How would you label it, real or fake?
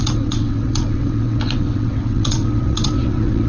fake